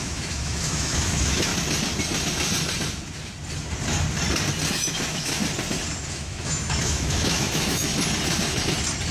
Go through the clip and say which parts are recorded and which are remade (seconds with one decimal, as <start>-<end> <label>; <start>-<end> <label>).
0.0-1.5 remade; 1.5-4.7 recorded; 4.7-5.4 remade; 5.4-6.1 recorded; 6.1-7.9 remade; 7.9-9.1 recorded

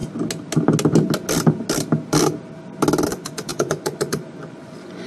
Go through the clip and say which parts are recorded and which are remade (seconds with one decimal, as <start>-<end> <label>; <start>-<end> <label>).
0.0-3.1 recorded; 3.1-5.1 remade

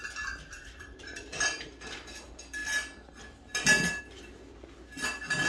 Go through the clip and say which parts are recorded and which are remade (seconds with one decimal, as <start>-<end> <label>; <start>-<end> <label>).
0.0-5.5 recorded

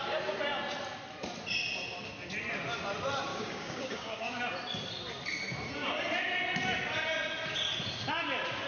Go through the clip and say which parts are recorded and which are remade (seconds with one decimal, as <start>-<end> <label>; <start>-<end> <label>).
0.0-3.3 recorded; 3.3-4.4 remade; 4.4-8.7 recorded

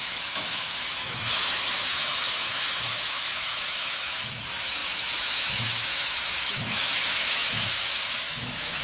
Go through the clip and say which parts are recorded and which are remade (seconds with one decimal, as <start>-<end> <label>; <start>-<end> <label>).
0.0-8.8 remade

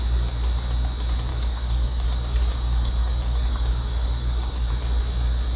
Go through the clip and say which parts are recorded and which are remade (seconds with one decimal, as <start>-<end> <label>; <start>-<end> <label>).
0.0-1.3 recorded; 1.3-4.7 remade; 4.7-5.6 recorded